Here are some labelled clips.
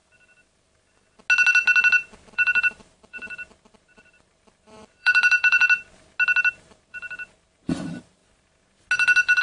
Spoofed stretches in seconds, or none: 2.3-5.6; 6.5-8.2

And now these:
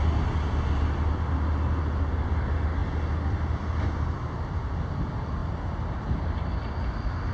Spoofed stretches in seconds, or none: 5.4-6.2

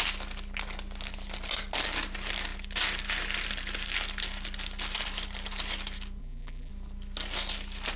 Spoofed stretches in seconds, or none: 6.2-6.7